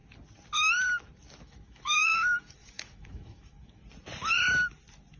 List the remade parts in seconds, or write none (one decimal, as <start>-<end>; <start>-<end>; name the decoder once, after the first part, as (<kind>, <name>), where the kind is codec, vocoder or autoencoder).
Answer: 1.4-3.8 (autoencoder, DAC-VAE)